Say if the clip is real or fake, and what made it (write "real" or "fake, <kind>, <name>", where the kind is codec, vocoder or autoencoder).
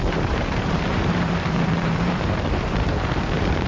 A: fake, vocoder, BigVGAN v2